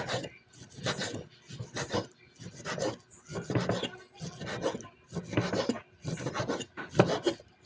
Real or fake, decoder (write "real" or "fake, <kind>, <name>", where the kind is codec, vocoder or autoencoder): real